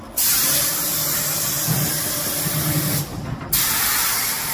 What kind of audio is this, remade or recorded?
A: recorded